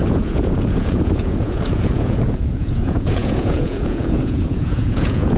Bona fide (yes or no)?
no